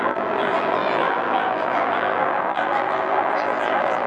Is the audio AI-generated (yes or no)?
yes